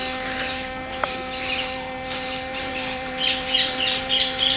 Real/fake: fake